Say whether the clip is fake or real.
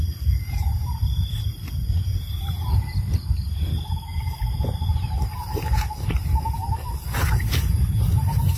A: fake